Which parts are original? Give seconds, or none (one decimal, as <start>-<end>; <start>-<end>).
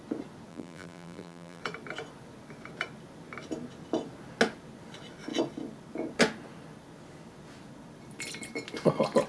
0.0-0.5; 1.6-9.3